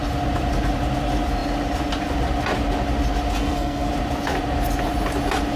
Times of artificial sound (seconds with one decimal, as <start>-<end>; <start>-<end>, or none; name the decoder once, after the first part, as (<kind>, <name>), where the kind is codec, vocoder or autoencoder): 3.4-3.9 (codec, SNAC)